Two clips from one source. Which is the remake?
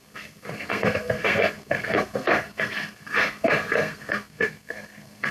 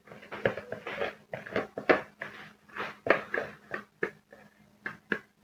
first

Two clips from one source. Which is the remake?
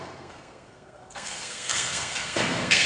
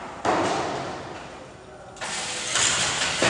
first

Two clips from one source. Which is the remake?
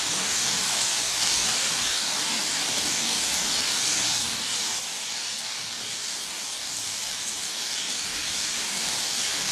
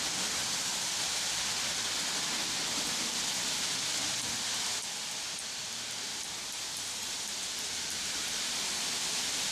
first